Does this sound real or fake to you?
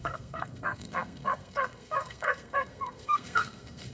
fake